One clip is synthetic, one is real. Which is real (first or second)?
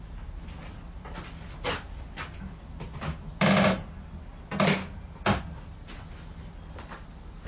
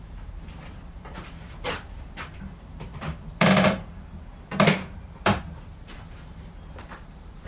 first